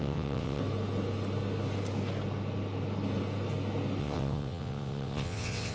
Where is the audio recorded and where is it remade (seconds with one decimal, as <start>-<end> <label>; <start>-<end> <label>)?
0.0-0.6 remade; 0.6-4.0 recorded; 4.0-5.7 remade